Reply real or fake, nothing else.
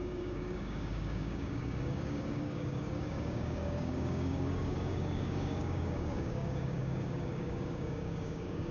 fake